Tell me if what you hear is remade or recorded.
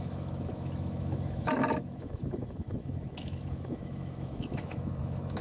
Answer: remade